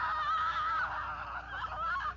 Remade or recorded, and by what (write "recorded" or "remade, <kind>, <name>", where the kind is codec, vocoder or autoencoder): recorded